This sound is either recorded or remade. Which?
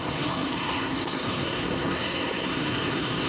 remade